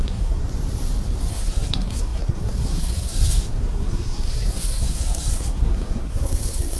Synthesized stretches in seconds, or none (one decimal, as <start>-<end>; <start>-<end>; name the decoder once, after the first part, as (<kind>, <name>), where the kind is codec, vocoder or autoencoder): 0.0-0.4 (codec, SNAC); 1.3-6.8